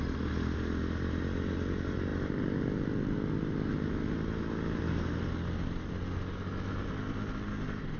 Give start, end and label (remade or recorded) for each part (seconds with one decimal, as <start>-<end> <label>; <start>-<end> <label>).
0.0-8.0 recorded

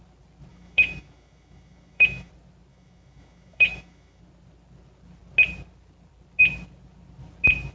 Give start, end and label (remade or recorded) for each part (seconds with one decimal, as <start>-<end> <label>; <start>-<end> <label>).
0.0-0.5 recorded; 0.5-2.3 remade; 2.3-2.7 recorded; 2.7-4.2 remade; 4.2-7.7 recorded

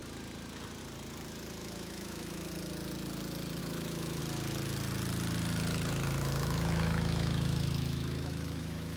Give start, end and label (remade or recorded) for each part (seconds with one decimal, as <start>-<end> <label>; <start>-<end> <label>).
0.0-1.6 recorded; 1.6-2.5 remade; 2.5-3.6 recorded; 3.6-4.2 remade; 4.2-6.2 recorded; 6.2-9.0 remade

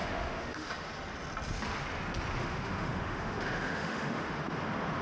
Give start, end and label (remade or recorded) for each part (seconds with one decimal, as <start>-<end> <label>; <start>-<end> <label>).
0.0-0.7 remade; 0.7-2.4 recorded; 2.4-4.4 remade; 4.4-5.0 recorded